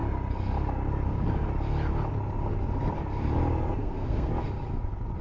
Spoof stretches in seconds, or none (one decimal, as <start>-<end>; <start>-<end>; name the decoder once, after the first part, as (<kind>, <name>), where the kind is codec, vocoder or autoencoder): 3.8-4.3 (codec, SNAC)